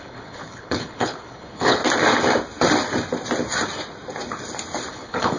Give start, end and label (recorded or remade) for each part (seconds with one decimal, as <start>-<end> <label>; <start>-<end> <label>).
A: 0.0-1.8 remade; 1.8-4.9 recorded; 4.9-5.4 remade